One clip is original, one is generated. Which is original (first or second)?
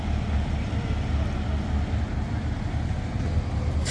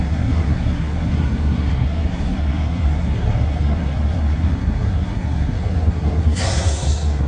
first